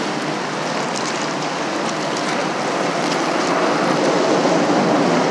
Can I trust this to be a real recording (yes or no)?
yes